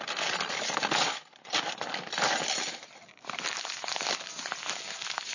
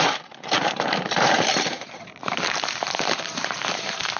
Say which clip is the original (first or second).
first